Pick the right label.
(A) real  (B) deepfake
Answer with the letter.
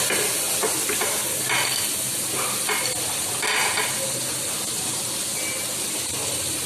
A